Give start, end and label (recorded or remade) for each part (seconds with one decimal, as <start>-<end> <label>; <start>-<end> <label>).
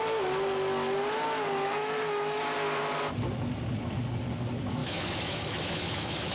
0.0-1.8 recorded; 1.8-2.4 remade; 2.4-4.8 recorded; 4.8-6.3 remade